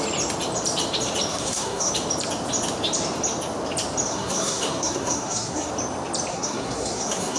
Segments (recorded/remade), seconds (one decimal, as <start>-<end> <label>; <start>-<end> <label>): 0.0-1.3 recorded; 1.3-1.9 remade; 1.9-4.1 recorded; 4.1-5.7 remade; 5.7-6.3 recorded; 6.3-7.4 remade